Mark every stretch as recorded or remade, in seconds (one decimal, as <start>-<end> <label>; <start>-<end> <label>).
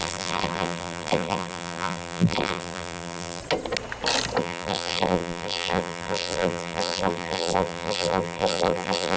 0.0-3.4 remade; 3.4-4.4 recorded; 4.4-9.2 remade